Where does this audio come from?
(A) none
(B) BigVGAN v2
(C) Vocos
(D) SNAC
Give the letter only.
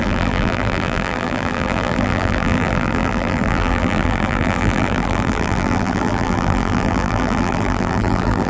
B